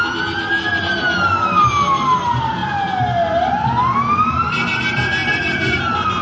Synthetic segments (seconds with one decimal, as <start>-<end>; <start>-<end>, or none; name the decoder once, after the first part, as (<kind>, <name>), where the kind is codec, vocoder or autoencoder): 5.2-5.8 (vocoder, BigVGAN v2)